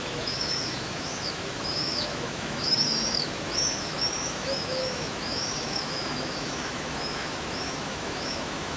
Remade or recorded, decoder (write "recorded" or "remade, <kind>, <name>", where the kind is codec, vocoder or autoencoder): remade, autoencoder, DAC-VAE